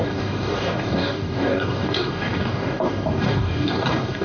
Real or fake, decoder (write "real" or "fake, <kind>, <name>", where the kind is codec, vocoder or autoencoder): fake, codec, DAC